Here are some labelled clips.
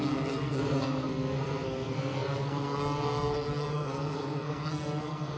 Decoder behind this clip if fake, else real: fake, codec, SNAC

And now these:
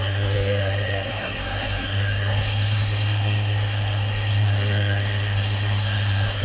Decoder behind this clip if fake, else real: fake, codec, SNAC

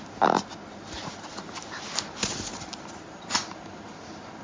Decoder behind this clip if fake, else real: real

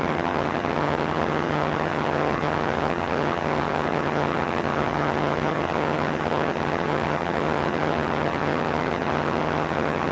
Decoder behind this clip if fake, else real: fake, vocoder, HiFi-GAN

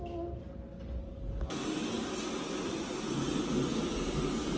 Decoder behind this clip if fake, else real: real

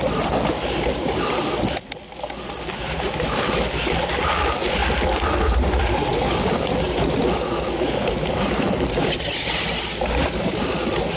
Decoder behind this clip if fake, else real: real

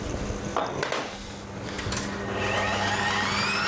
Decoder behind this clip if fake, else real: real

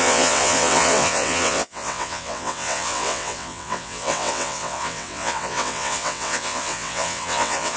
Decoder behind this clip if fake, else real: fake, vocoder, WaveNeXt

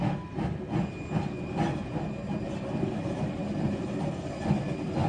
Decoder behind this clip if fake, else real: real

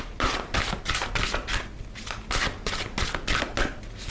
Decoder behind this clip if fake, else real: real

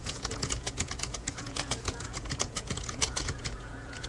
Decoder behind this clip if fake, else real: fake, vocoder, Vocos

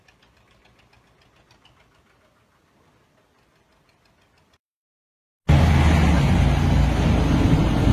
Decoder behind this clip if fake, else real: real